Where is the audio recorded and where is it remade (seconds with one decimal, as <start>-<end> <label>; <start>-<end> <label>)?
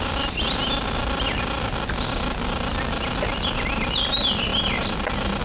0.0-5.4 recorded